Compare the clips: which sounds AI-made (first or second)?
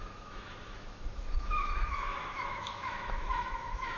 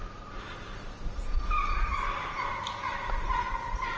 first